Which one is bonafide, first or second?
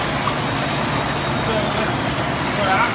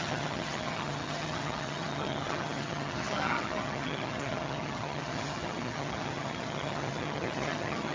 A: first